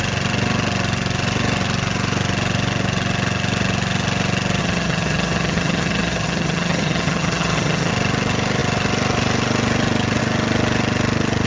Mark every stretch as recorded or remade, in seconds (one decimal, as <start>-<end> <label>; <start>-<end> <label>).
0.0-4.6 recorded; 4.6-7.9 remade; 7.9-11.5 recorded

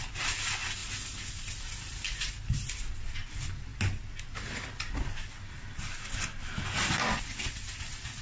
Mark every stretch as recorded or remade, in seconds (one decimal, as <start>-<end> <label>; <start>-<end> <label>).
0.0-8.2 recorded

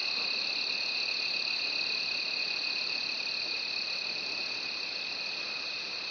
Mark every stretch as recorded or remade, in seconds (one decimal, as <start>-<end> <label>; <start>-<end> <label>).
0.0-6.1 recorded